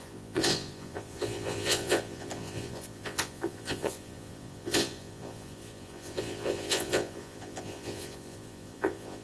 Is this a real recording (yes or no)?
no